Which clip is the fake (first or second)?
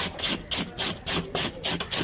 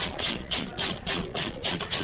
second